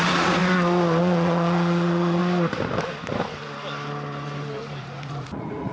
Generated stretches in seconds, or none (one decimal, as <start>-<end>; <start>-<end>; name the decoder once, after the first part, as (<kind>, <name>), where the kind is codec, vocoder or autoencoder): 0.0-0.4 (vocoder, Vocos); 1.0-2.2; 4.8-5.7